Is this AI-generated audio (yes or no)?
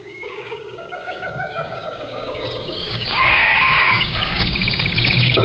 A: yes